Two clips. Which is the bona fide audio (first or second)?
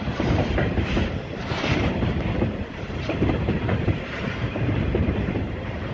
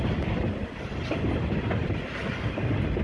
second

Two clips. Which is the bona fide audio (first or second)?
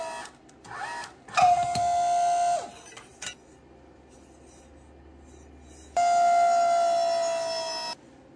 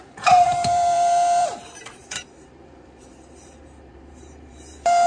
first